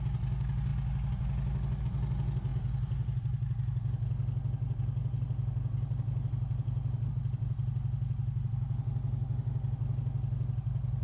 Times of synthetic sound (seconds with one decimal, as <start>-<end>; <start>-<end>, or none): none